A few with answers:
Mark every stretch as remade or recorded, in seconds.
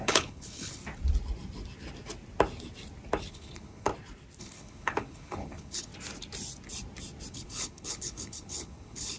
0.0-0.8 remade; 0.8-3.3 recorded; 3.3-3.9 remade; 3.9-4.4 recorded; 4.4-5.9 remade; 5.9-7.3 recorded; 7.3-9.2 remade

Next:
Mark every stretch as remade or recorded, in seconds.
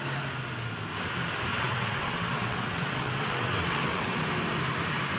0.0-1.5 recorded; 1.5-4.2 remade; 4.2-5.2 recorded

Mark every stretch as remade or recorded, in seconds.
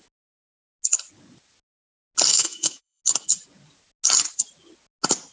0.0-2.3 recorded; 2.3-3.0 remade; 3.0-5.3 recorded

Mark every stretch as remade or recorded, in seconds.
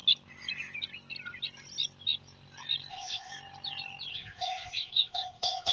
0.0-2.9 recorded; 2.9-3.3 remade; 3.3-4.1 recorded; 4.1-5.7 remade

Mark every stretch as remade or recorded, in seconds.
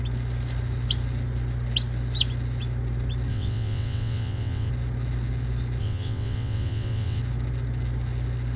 0.0-3.3 recorded; 3.3-4.7 remade; 4.7-5.8 recorded; 5.8-7.2 remade; 7.2-8.6 recorded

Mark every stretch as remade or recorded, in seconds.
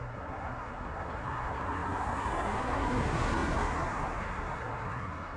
0.0-5.4 remade